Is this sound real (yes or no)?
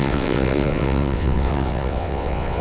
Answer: no